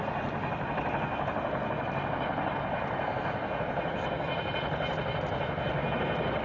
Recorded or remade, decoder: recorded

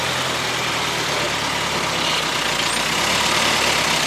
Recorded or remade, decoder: recorded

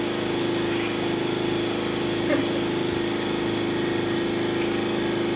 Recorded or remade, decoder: recorded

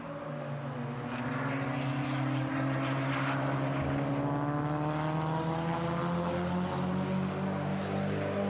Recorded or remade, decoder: recorded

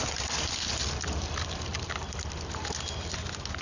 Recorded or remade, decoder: recorded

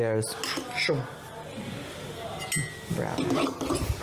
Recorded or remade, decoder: recorded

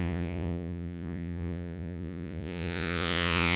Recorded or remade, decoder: remade, vocoder, Vocos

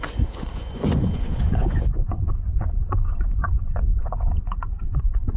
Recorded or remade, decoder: remade, vocoder, Vocos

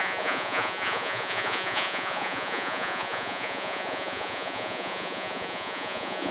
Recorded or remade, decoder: remade, vocoder, Vocos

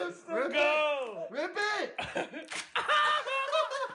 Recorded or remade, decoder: recorded